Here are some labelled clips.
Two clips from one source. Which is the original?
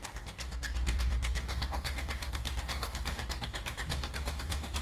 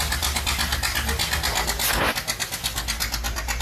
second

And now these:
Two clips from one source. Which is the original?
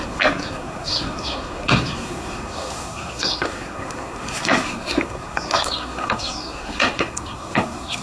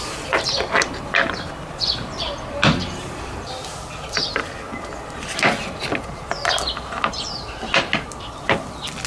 second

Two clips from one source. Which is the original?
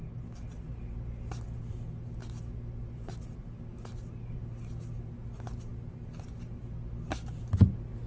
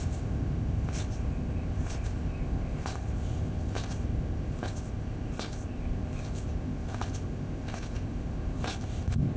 first